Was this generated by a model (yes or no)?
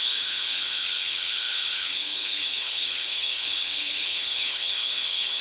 yes